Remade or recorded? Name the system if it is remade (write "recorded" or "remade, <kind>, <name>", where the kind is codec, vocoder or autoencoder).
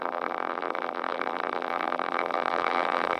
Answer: remade, vocoder, BigVGAN v2